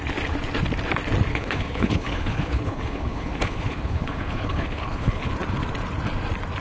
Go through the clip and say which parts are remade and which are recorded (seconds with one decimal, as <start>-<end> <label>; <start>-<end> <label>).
0.0-1.3 recorded; 1.3-5.3 remade; 5.3-6.6 recorded